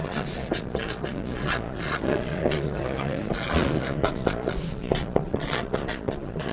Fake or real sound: fake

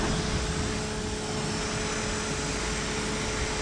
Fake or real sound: real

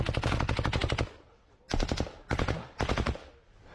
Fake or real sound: real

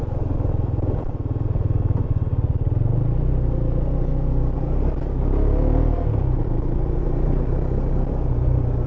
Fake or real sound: real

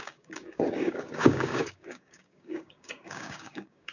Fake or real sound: fake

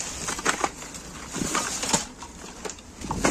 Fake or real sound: real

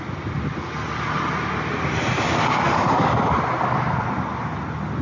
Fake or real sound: real